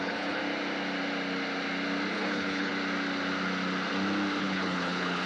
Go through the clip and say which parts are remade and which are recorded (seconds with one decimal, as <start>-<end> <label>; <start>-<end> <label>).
0.0-0.4 remade; 0.4-2.1 recorded; 2.1-2.7 remade; 2.7-4.4 recorded; 4.4-5.3 remade